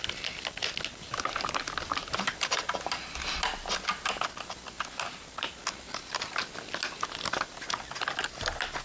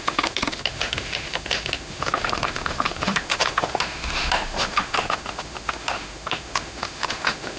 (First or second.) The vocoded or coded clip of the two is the second